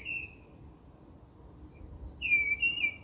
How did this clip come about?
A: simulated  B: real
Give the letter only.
B